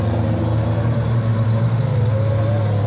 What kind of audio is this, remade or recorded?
recorded